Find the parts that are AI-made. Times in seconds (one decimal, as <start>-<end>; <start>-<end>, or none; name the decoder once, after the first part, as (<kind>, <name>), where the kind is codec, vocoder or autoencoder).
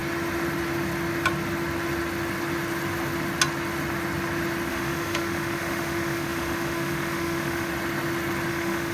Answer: 4.7-7.7 (autoencoder, DAC-VAE); 8.5-8.9